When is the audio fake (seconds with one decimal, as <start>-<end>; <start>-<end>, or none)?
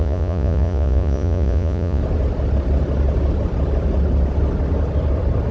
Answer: 0.0-2.0